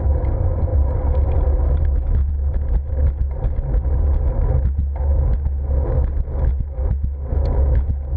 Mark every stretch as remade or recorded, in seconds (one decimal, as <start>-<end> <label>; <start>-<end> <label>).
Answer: 0.0-8.2 recorded